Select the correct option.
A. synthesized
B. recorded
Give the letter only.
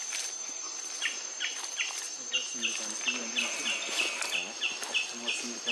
B